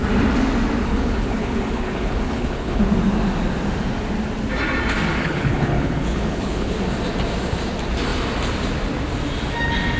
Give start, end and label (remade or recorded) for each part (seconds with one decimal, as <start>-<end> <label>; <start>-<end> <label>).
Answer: 0.0-0.8 recorded; 0.8-2.8 remade; 2.8-5.2 recorded; 5.2-6.7 remade; 6.7-10.0 recorded